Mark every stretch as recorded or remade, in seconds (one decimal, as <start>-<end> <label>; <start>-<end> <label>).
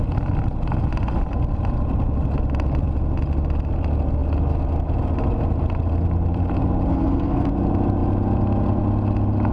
0.0-6.9 recorded; 6.9-7.5 remade; 7.5-9.5 recorded